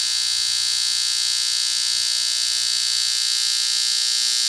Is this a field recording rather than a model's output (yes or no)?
yes